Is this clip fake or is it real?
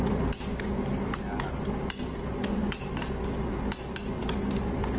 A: real